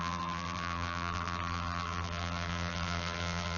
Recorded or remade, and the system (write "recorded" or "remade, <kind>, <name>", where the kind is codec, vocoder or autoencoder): remade, vocoder, BigVGAN v2